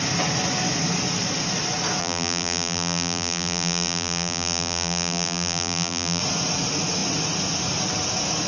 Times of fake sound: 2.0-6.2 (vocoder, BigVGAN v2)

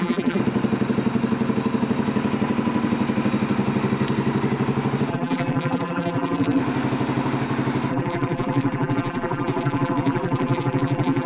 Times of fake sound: 0.0-0.4 (vocoder, BigVGAN v2); 5.1-6.6; 7.9-11.3

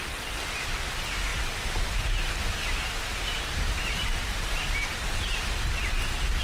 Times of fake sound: 1.3-5.1 (vocoder, BigVGAN v2)

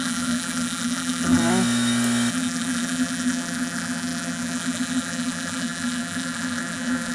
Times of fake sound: 0.0-1.4 (vocoder, BigVGAN v2); 2.3-7.1

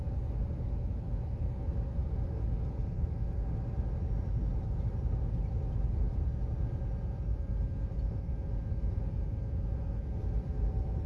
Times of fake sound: none